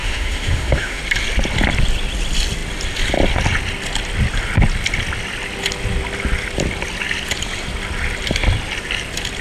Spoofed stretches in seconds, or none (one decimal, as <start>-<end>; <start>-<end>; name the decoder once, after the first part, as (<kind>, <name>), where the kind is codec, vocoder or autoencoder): 0.0-1.0 (autoencoder, DAC-VAE)